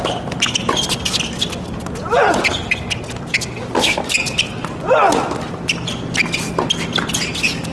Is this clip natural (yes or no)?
yes